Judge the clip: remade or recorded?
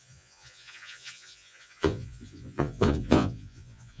remade